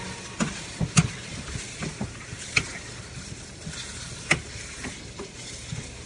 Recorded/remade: recorded